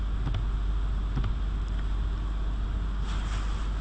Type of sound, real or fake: real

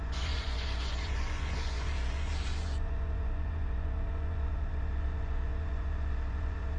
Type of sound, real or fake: fake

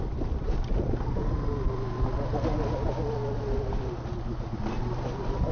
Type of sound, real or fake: real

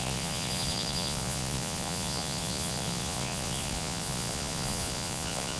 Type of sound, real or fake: fake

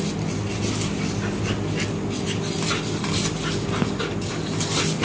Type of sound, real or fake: real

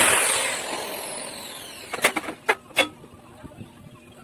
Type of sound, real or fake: real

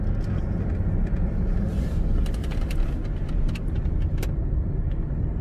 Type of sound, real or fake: real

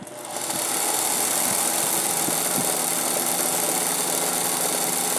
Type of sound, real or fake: real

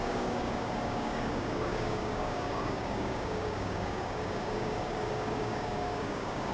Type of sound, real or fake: fake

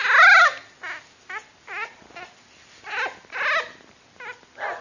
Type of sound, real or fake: real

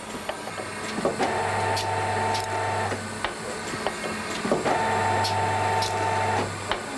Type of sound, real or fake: real